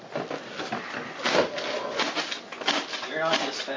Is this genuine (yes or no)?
yes